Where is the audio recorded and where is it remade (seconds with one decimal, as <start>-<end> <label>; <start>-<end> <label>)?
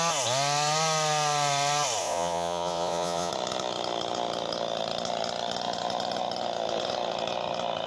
0.0-2.0 recorded; 2.0-3.3 remade; 3.3-7.9 recorded